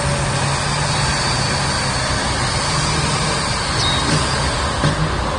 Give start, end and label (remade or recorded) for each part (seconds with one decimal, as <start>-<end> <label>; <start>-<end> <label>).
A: 0.0-2.2 recorded; 2.2-5.4 remade

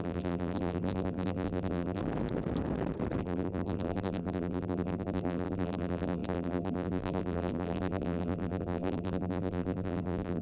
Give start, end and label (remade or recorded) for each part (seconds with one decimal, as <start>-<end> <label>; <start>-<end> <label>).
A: 0.0-2.0 remade; 2.0-3.2 recorded; 3.2-10.4 remade

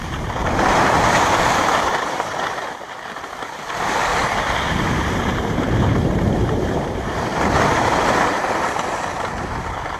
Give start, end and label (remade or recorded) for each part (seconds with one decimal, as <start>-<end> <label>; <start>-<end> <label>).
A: 0.0-4.1 remade; 4.1-4.7 recorded; 4.7-10.0 remade

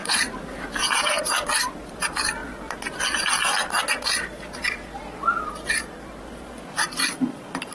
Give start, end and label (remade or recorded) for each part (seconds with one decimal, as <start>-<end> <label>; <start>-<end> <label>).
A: 0.0-1.2 remade; 1.2-7.7 recorded

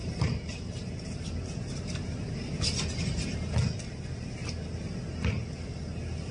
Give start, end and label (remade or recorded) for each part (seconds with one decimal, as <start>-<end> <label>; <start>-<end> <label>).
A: 0.0-2.1 remade; 2.1-6.3 recorded

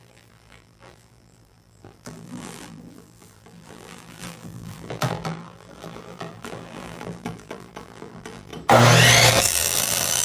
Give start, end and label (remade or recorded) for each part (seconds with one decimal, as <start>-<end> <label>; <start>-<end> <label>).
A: 0.0-8.5 remade; 8.5-9.3 recorded; 9.3-10.2 remade

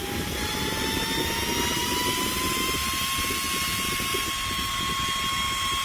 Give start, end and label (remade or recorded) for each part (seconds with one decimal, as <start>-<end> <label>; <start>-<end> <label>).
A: 0.0-5.8 recorded